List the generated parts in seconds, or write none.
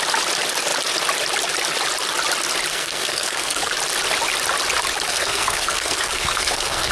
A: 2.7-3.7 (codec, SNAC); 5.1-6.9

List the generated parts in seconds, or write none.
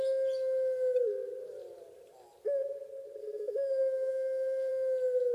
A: 3.2-4.7 (codec, SNAC)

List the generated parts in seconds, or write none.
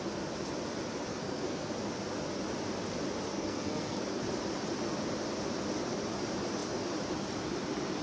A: 1.1-1.7 (codec, SNAC); 3.3-4.2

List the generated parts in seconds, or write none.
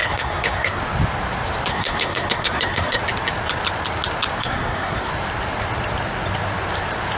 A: 0.0-0.8 (codec, SNAC); 1.7-3.0; 4.4-5.1